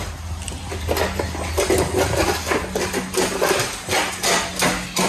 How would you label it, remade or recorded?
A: recorded